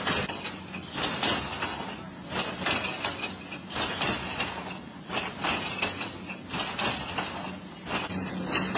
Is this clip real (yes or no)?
yes